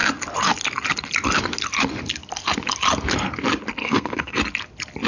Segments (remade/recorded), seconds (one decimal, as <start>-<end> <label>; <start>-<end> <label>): 0.0-3.8 recorded; 3.8-4.4 remade; 4.4-5.1 recorded